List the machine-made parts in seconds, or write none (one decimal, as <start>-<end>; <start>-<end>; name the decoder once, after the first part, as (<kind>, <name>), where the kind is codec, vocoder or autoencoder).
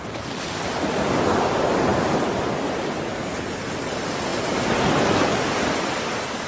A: none